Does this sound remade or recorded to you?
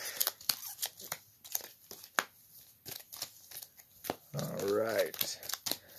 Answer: recorded